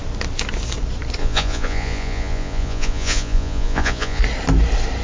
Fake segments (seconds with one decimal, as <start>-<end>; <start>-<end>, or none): 1.2-4.2